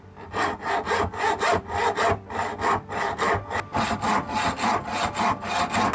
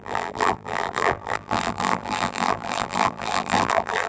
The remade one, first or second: second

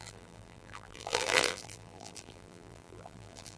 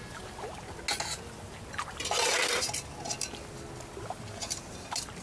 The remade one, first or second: first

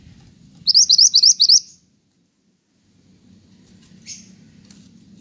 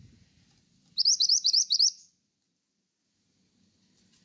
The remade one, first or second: second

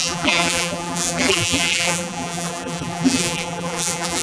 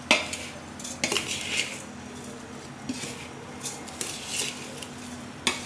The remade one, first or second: first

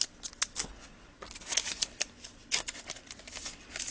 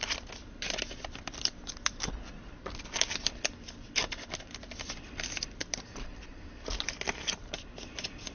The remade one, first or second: second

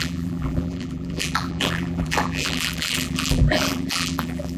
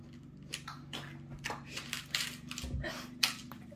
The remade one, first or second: first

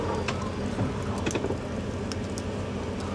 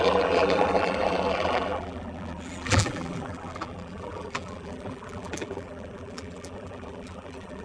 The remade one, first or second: second